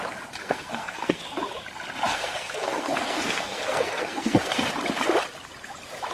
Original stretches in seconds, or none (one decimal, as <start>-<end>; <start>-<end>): 0.0-0.4; 1.2-2.1; 4.7-6.1